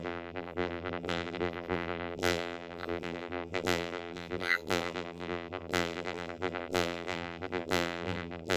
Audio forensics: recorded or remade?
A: remade